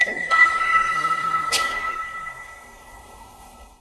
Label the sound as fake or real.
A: fake